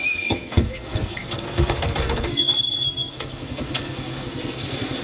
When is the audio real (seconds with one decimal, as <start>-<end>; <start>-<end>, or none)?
none